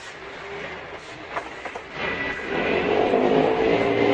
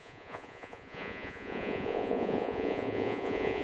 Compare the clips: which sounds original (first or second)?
first